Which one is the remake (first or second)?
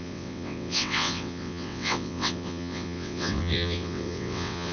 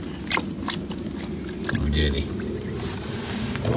first